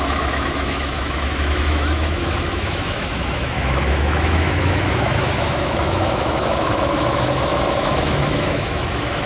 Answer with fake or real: fake